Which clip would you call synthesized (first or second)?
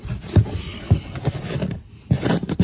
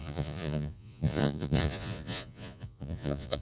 second